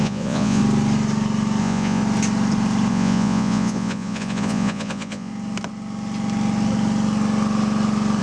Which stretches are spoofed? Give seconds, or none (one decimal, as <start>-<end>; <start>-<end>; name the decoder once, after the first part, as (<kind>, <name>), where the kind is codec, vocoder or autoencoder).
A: 0.0-0.6 (vocoder, Vocos); 1.6-2.0; 2.9-5.3

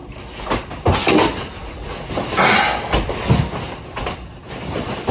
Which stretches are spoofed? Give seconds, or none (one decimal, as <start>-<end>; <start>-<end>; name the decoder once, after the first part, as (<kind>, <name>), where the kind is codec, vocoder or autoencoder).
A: none

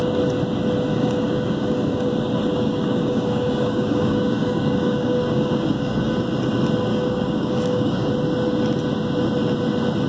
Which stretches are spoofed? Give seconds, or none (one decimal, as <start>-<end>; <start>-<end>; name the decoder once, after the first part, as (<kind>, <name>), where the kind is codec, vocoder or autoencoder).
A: 0.9-2.1 (codec, DAC); 2.5-6.1; 6.9-8.1

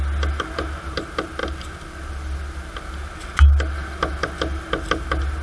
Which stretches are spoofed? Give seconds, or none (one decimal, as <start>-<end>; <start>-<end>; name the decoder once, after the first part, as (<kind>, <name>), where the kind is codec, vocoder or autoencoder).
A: none

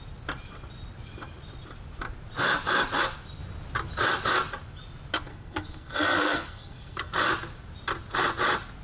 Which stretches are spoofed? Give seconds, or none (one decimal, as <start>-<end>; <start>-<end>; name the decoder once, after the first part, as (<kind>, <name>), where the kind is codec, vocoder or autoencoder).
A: 5.3-7.1 (codec, SNAC)

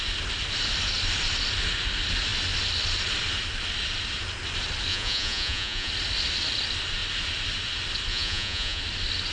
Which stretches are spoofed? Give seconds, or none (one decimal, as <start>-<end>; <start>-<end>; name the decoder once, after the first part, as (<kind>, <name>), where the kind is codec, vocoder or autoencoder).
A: 4.9-5.9 (vocoder, Vocos); 8.1-8.8

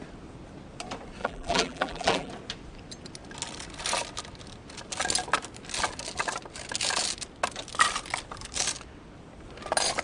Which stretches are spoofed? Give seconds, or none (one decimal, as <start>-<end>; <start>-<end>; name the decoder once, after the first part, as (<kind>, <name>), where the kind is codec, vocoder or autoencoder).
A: 1.2-2.3 (vocoder, BigVGAN v2)

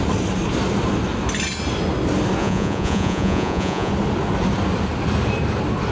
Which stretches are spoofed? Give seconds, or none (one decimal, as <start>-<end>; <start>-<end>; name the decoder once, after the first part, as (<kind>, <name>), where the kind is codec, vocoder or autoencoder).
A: 2.4-3.9 (vocoder, Vocos)